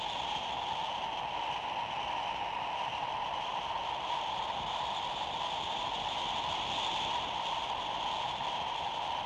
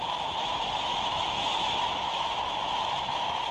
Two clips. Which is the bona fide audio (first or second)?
first